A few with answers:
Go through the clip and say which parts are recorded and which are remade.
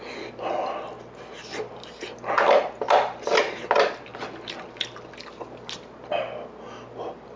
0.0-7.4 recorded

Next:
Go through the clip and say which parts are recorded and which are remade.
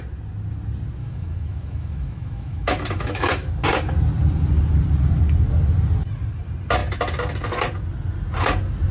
0.0-1.0 recorded; 1.0-3.5 remade; 3.5-8.9 recorded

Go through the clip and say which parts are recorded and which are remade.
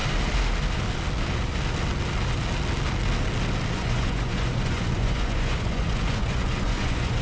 0.0-3.7 recorded; 3.7-7.2 remade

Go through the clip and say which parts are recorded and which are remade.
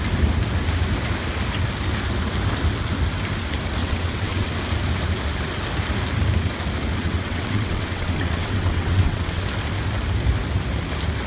0.0-3.8 recorded; 3.8-4.5 remade; 4.5-7.0 recorded; 7.0-9.4 remade; 9.4-11.3 recorded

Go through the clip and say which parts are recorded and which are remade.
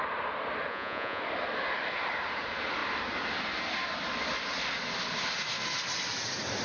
0.0-0.7 recorded; 0.7-1.2 remade; 1.2-6.6 recorded